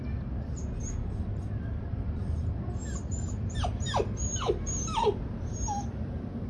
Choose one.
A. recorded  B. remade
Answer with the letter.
B